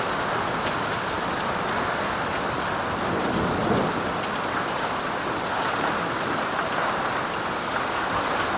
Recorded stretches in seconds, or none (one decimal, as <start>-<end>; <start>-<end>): 0.0-8.6